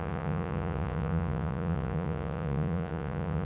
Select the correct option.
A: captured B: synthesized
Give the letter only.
B